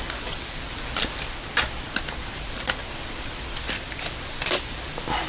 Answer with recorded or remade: recorded